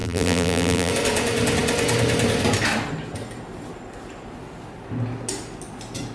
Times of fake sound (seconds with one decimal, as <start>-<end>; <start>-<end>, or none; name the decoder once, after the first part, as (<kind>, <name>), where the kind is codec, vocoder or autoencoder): 0.0-0.9 (vocoder, BigVGAN v2)